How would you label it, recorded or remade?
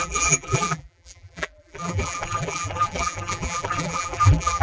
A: remade